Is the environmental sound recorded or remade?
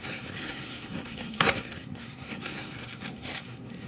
remade